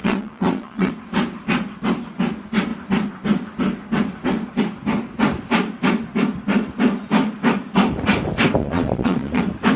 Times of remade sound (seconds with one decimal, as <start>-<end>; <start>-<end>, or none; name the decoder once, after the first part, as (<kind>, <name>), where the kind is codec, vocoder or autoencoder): 0.0-0.9 (vocoder, Vocos); 8.6-9.4